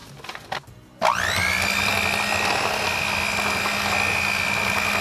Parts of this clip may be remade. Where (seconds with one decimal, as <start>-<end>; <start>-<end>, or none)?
none